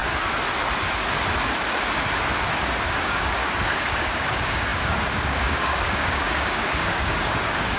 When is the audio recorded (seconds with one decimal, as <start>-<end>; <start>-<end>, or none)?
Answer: 0.0-3.0